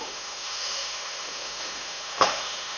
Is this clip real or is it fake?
fake